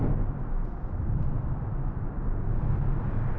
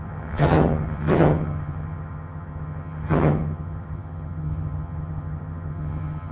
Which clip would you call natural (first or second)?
first